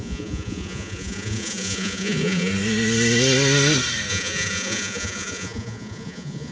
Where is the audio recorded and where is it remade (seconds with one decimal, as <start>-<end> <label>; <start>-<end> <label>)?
0.0-2.5 remade; 2.5-4.1 recorded; 4.1-6.5 remade